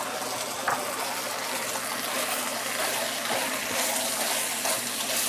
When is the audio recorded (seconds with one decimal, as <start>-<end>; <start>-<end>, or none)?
0.0-5.3